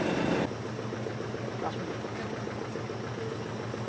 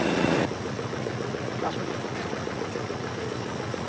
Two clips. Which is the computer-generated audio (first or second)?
second